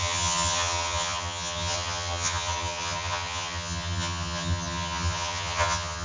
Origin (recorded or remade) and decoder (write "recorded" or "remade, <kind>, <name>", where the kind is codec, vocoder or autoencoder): remade, vocoder, HiFi-GAN